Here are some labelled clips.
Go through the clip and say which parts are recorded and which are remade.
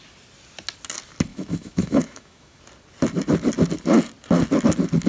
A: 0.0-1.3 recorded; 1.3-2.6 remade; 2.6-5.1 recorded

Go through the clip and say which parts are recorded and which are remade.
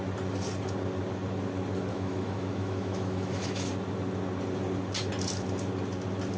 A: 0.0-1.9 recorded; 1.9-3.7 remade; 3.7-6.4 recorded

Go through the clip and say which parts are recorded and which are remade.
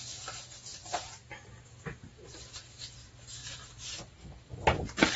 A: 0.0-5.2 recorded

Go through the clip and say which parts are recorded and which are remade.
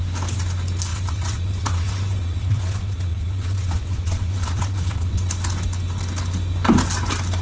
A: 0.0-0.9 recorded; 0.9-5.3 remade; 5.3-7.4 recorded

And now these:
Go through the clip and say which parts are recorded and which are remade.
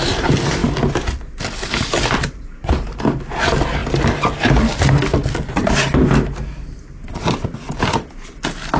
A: 0.0-8.8 recorded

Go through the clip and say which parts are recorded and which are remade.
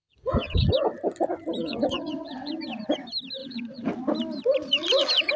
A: 0.0-0.7 remade; 0.7-1.6 recorded; 1.6-2.5 remade; 2.5-3.4 recorded; 3.4-3.9 remade; 3.9-5.4 recorded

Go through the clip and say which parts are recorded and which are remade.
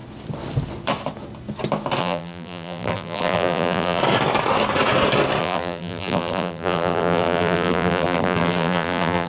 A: 0.0-2.0 recorded; 2.0-4.0 remade; 4.0-5.4 recorded; 5.4-9.3 remade